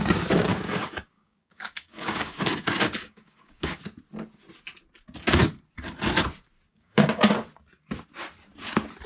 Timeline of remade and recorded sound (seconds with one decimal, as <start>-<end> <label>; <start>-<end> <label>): 0.0-0.5 recorded; 0.5-3.8 remade; 3.8-6.7 recorded; 6.7-7.3 remade; 7.3-9.1 recorded